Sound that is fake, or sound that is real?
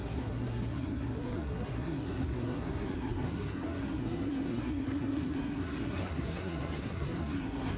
fake